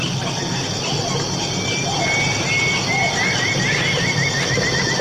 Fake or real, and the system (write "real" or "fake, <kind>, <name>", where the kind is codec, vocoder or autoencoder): real